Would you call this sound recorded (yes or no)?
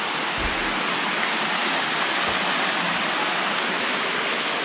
yes